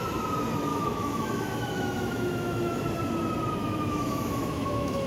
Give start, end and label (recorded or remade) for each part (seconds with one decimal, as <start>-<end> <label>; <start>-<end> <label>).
0.0-0.7 recorded; 0.7-2.8 remade; 2.8-3.6 recorded; 3.6-5.1 remade